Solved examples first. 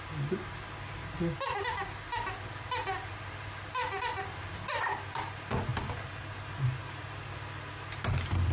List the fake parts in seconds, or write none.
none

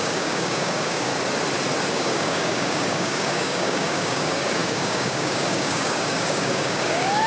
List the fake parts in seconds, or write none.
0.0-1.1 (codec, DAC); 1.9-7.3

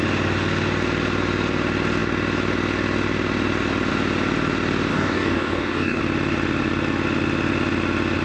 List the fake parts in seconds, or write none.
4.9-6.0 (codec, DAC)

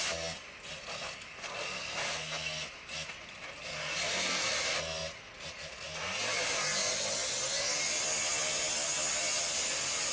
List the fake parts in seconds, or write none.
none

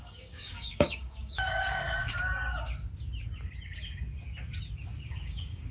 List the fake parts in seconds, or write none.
0.0-2.0 (codec, DAC); 5.1-5.7